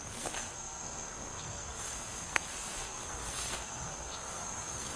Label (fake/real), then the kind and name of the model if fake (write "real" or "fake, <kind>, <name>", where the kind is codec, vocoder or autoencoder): fake, codec, SNAC